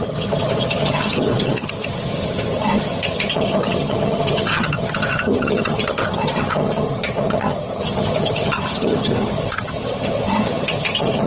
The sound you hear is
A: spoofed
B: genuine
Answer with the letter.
A